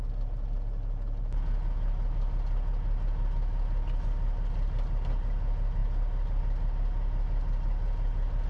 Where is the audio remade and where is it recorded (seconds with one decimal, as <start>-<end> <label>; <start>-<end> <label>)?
0.0-8.5 recorded